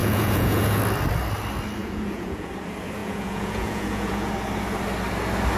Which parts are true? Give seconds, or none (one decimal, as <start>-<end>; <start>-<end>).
0.8-1.8; 2.5-3.0; 4.3-5.6